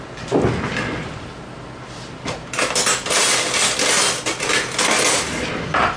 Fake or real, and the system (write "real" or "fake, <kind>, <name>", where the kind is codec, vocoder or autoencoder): real